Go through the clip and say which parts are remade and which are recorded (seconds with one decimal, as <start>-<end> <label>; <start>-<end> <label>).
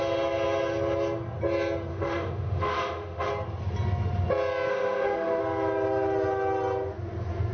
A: 0.0-1.9 recorded; 1.9-3.3 remade; 3.3-4.7 recorded; 4.7-5.4 remade; 5.4-7.5 recorded